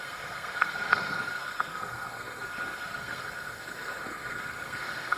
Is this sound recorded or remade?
remade